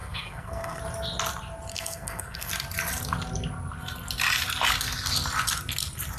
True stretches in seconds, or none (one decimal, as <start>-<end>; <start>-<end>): 0.8-1.7; 2.5-6.2